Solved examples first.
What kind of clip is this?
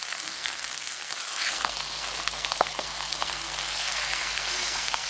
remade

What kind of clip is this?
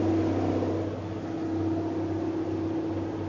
recorded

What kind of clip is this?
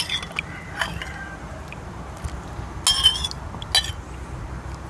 recorded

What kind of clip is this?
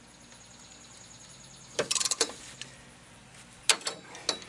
recorded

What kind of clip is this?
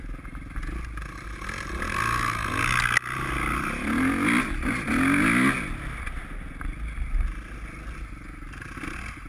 recorded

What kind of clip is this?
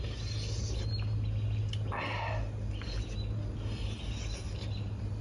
recorded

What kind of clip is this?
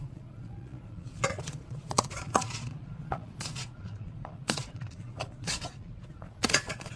remade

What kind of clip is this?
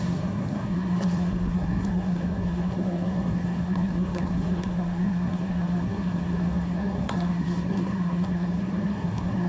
remade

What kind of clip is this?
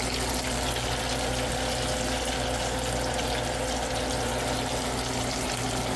recorded